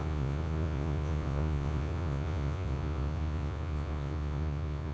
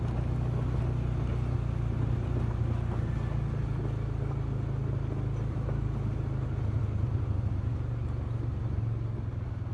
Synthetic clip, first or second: first